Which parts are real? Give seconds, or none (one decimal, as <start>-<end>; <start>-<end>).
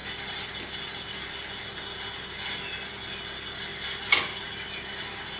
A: 0.0-5.4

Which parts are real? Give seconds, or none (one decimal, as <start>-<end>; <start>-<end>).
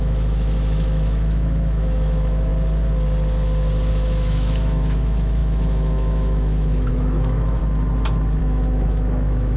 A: 2.5-3.9; 7.6-8.4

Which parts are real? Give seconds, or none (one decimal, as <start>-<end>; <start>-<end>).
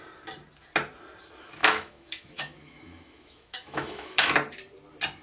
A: 0.0-1.6; 4.3-5.2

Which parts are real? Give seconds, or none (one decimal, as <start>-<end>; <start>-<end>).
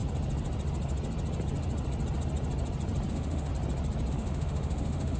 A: 0.0-3.1; 3.5-4.1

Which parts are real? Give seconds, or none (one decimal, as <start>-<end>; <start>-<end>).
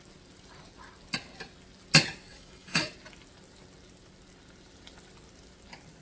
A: 0.0-2.3; 2.9-6.0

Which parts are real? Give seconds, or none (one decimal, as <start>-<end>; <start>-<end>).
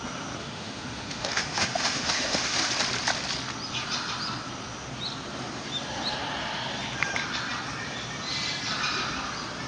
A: 0.0-0.4; 2.7-9.7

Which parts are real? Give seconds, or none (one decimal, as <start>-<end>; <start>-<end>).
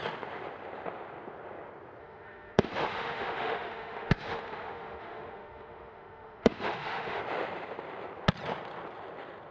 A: 0.0-2.0; 7.2-9.5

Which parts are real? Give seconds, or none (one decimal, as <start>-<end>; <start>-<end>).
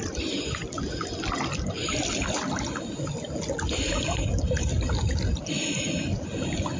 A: 0.0-6.8